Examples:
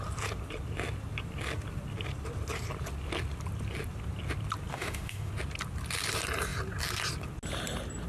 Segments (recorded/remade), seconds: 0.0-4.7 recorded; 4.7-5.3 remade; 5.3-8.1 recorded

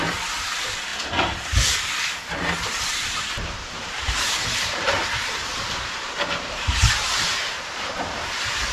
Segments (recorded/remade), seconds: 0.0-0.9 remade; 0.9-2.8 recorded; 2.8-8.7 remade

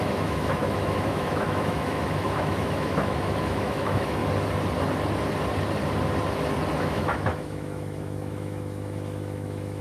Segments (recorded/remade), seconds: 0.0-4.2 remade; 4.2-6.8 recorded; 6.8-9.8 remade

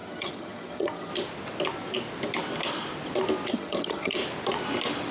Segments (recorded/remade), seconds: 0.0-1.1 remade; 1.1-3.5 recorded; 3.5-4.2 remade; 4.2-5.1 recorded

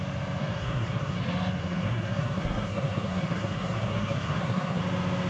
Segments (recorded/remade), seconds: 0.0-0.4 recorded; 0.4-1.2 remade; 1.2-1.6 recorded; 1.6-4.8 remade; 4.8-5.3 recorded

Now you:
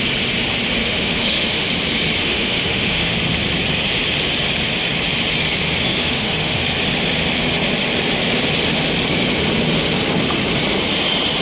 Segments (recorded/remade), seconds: 0.0-0.8 recorded; 0.8-1.7 remade; 1.7-2.2 recorded; 2.2-3.1 remade; 3.1-5.9 recorded; 5.9-6.6 remade; 6.6-11.4 recorded

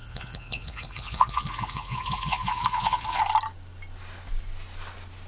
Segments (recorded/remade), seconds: 0.0-3.2 remade; 3.2-5.3 recorded

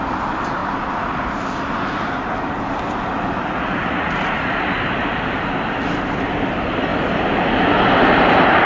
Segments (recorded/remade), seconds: 0.0-3.4 recorded; 3.4-4.7 remade; 4.7-8.7 recorded